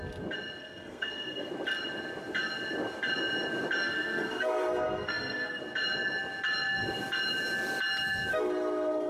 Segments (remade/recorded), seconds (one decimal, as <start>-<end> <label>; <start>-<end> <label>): 0.0-0.6 recorded; 0.6-1.5 remade; 1.5-3.8 recorded; 3.8-5.6 remade; 5.6-8.3 recorded; 8.3-9.1 remade